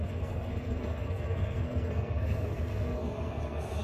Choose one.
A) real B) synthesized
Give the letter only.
B